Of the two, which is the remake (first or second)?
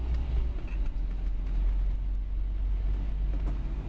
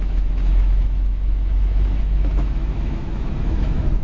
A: second